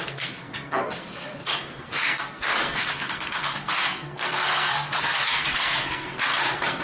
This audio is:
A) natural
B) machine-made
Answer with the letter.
B